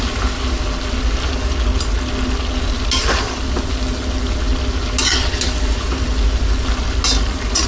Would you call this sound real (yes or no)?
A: yes